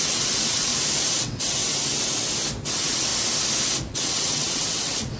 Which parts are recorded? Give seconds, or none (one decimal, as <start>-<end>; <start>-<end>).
0.7-1.2; 1.6-2.6; 3.1-3.9